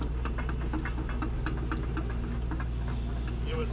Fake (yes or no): no